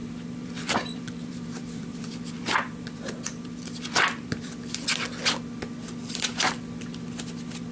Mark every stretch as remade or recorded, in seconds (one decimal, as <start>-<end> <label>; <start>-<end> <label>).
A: 0.0-4.5 remade; 4.5-7.7 recorded